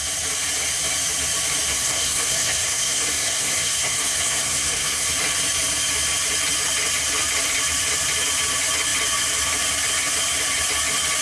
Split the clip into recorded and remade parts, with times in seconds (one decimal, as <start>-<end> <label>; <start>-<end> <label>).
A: 0.0-1.7 recorded; 1.7-5.1 remade; 5.1-11.2 recorded